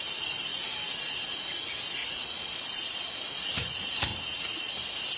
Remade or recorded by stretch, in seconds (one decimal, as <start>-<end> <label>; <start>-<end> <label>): 0.0-2.0 recorded; 2.0-2.6 remade; 2.6-4.1 recorded; 4.1-4.7 remade; 4.7-5.2 recorded